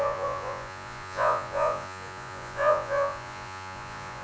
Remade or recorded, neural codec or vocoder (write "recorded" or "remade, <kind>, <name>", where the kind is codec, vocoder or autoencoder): remade, vocoder, Vocos